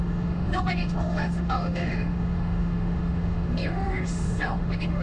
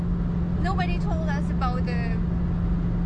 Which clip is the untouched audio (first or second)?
second